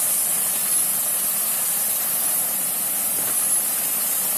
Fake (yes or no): no